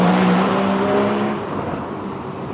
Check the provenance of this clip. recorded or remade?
remade